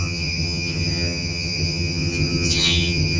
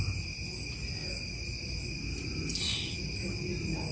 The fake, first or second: first